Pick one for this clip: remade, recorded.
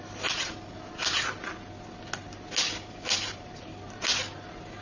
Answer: recorded